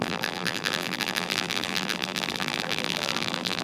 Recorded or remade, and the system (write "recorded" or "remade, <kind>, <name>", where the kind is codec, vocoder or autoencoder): remade, vocoder, BigVGAN v2